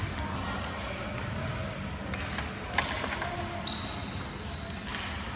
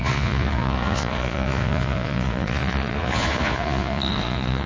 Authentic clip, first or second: first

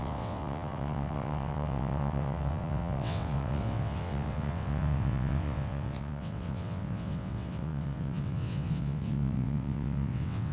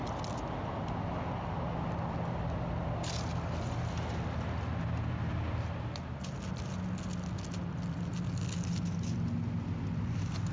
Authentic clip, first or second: second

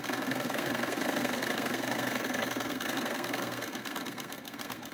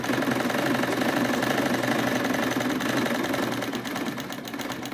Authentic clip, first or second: second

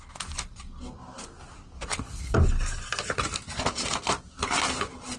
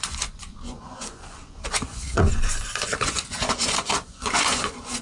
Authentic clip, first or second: first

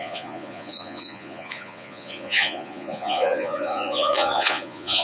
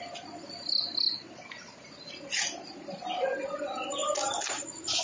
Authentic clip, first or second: second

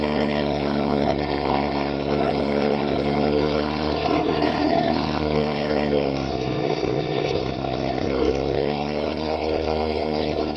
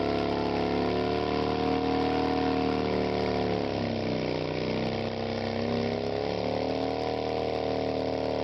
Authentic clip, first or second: second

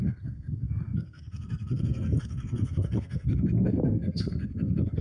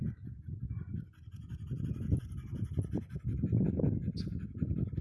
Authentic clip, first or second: second